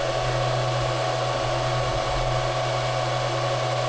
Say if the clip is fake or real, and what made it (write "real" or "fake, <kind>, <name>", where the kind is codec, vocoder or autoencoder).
real